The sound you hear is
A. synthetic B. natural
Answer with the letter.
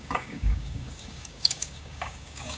A